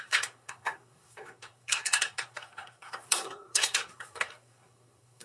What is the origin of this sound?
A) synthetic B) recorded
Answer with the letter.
A